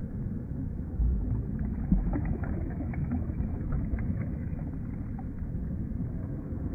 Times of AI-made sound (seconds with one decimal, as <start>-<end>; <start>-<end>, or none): 0.0-4.6; 5.4-6.7